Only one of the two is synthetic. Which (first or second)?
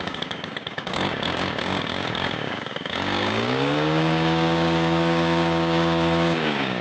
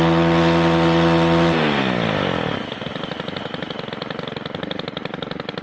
first